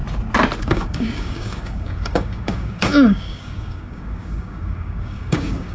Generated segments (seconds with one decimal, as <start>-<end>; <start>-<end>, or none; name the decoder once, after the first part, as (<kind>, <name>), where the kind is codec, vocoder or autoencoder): 0.6-5.7 (codec, DAC)